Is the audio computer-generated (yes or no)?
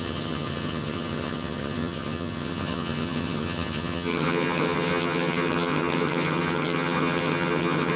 yes